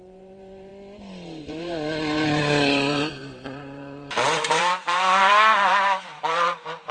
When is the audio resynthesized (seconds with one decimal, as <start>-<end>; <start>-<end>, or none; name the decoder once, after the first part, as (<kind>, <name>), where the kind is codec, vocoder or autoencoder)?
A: 0.0-0.7 (vocoder, BigVGAN v2); 1.4-6.9